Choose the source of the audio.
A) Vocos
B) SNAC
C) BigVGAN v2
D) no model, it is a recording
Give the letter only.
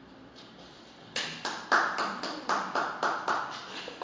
D